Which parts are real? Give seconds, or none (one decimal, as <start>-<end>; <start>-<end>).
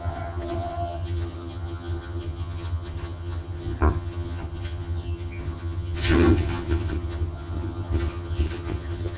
none